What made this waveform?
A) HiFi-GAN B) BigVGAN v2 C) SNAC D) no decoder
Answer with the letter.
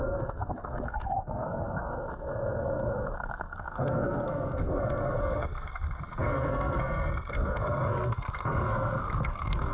C